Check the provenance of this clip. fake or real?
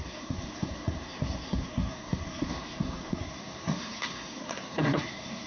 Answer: fake